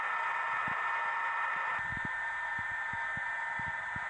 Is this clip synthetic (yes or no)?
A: no